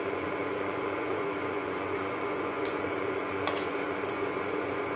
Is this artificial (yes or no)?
yes